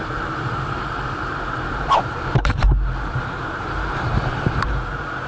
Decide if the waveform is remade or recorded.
remade